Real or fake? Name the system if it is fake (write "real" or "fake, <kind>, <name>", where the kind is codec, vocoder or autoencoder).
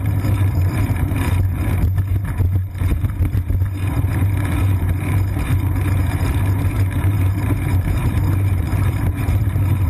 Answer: fake, vocoder, BigVGAN v2